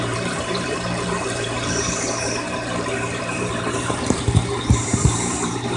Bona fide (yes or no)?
no